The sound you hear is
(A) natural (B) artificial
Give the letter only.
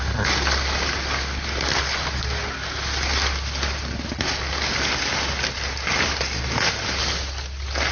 A